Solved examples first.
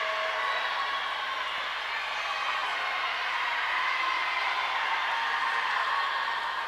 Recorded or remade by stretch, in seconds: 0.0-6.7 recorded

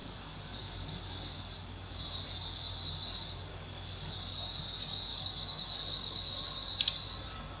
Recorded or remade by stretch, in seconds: 0.0-2.0 remade; 2.0-3.5 recorded; 3.5-4.6 remade; 4.6-5.1 recorded; 5.1-6.4 remade; 6.4-7.6 recorded

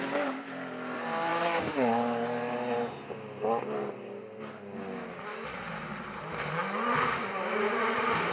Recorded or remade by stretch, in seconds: 0.0-8.3 recorded

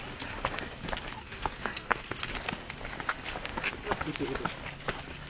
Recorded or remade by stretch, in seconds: 0.0-1.2 recorded; 1.2-2.2 remade; 2.2-5.3 recorded

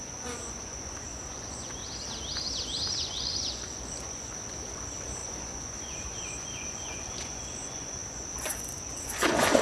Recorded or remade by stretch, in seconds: 0.0-1.8 remade; 1.8-2.9 recorded; 2.9-9.6 remade

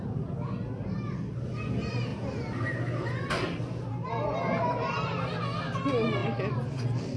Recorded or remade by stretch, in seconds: 0.0-7.2 recorded